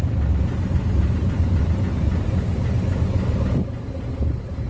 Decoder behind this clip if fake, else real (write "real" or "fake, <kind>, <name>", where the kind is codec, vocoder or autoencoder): real